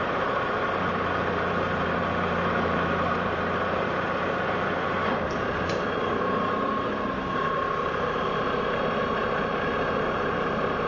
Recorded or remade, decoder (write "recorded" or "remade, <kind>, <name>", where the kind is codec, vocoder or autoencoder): remade, vocoder, BigVGAN v2